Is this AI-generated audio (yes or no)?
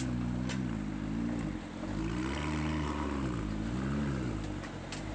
no